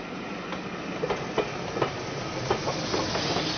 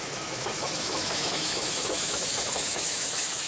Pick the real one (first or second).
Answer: first